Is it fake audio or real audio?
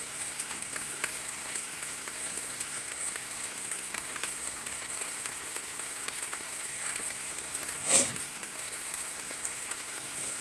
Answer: fake